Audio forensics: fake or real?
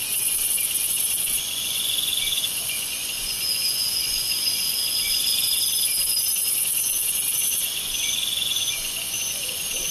fake